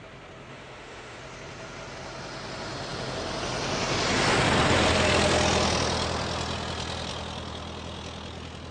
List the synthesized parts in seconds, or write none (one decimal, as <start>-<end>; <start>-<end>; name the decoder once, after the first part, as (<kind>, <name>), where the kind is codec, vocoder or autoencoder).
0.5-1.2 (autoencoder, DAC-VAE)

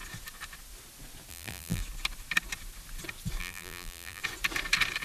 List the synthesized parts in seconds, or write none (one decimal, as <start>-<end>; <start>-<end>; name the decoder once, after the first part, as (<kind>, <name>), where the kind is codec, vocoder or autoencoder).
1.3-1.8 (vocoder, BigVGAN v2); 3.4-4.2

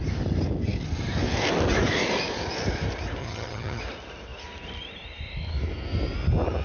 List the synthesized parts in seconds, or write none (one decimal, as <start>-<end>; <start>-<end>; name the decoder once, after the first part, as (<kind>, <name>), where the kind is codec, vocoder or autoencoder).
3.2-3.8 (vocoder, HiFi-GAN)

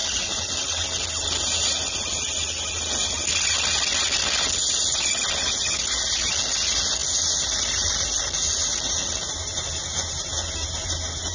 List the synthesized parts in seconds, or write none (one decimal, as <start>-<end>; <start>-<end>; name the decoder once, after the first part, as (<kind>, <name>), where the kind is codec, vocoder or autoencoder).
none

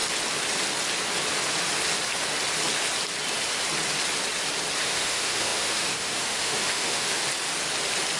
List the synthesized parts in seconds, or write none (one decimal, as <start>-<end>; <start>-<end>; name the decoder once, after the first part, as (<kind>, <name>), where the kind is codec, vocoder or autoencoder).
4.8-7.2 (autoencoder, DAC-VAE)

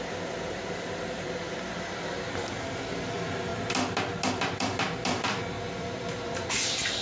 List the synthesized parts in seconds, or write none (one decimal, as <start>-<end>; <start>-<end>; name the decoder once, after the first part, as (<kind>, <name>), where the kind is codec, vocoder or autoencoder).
0.0-3.5 (vocoder, BigVGAN v2); 4.5-7.0

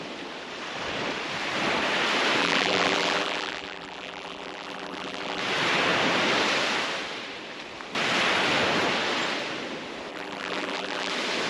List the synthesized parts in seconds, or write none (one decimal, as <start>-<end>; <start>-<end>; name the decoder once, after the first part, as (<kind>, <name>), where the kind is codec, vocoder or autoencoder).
2.4-5.4 (vocoder, BigVGAN v2); 10.1-11.1

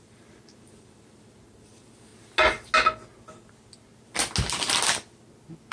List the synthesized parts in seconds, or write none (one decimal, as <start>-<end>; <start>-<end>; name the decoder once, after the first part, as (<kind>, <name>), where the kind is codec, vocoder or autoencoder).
0.0-2.1 (vocoder, BigVGAN v2)